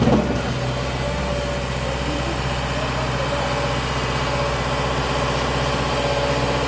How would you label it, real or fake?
real